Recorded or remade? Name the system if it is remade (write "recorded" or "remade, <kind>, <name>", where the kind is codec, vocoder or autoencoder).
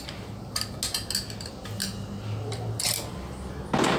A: recorded